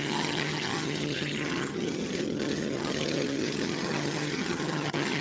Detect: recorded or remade remade